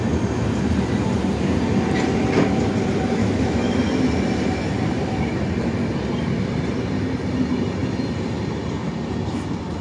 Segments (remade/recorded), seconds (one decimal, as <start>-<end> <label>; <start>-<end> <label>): 0.0-3.2 recorded; 3.2-3.8 remade; 3.8-9.8 recorded